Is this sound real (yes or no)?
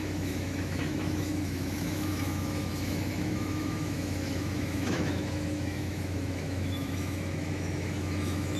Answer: no